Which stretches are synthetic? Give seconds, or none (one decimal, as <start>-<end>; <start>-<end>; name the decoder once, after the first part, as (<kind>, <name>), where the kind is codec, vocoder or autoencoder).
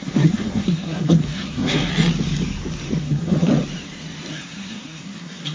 0.0-1.9 (codec, SNAC); 3.0-3.5; 4.3-5.5